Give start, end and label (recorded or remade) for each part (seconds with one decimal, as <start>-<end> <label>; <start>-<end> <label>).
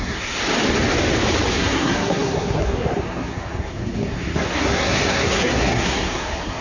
0.0-0.4 remade; 0.4-1.5 recorded; 1.5-6.6 remade